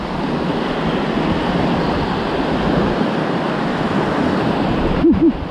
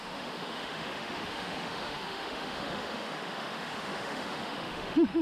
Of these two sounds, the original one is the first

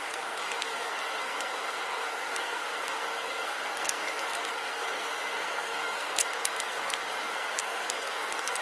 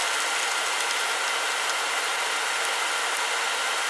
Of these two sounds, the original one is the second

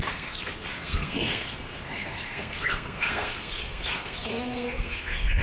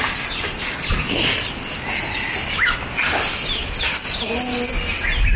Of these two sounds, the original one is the second